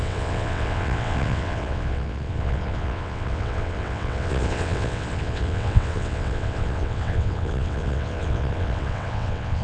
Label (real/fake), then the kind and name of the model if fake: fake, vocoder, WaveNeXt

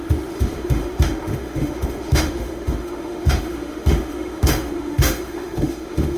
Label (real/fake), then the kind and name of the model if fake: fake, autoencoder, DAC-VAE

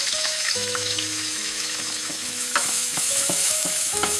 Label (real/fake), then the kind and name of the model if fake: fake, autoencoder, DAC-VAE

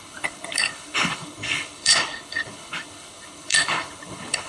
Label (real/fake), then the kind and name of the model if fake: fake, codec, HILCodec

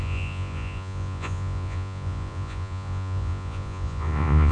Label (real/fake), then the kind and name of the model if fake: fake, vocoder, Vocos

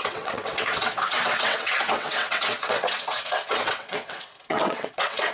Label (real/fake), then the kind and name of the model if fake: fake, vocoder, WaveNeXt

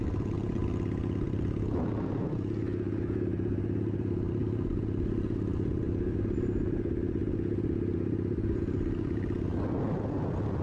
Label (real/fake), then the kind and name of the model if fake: real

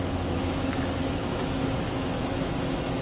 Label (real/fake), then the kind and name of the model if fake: fake, autoencoder, DAC-VAE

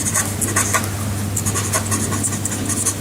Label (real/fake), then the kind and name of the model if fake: real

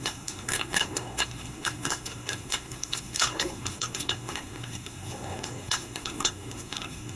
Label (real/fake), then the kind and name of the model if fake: fake, codec, SNAC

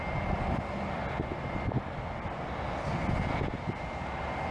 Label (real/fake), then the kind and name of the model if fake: real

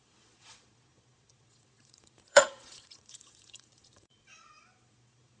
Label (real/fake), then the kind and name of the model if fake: fake, vocoder, Vocos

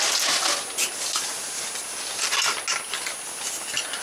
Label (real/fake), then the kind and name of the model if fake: real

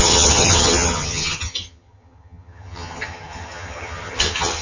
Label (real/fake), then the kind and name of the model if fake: fake, vocoder, HiFi-GAN